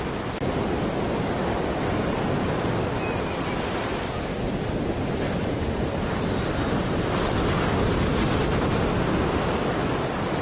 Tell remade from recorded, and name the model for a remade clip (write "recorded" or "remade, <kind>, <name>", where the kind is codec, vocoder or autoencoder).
recorded